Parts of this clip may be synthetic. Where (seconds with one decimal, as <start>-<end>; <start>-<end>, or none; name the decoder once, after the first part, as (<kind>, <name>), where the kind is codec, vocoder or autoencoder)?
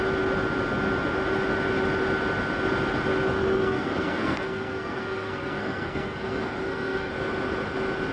3.4-7.1 (codec, SNAC)